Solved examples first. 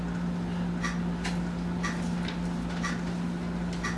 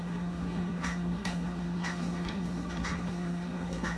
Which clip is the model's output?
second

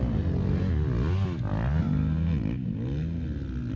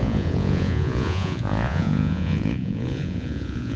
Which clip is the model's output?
second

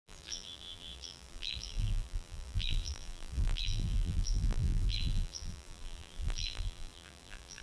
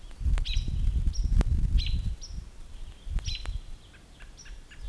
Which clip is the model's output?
first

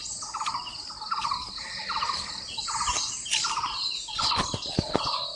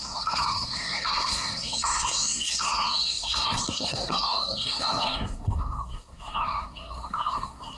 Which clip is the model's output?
second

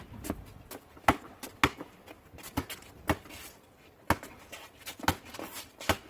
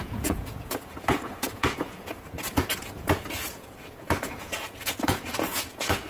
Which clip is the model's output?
second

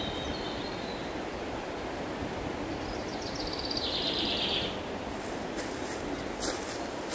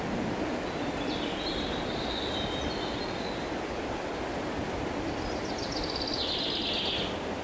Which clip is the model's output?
first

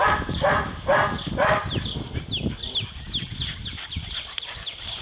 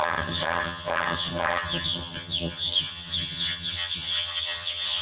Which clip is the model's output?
second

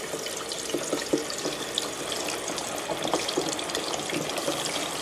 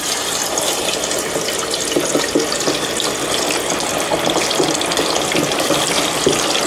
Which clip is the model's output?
first